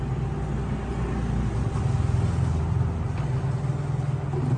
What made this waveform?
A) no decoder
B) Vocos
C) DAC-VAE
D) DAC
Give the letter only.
A